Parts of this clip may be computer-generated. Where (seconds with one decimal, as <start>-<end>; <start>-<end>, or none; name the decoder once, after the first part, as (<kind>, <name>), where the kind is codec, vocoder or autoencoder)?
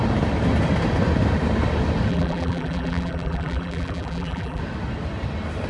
2.1-4.6 (vocoder, BigVGAN v2)